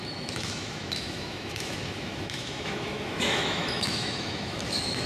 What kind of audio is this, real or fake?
fake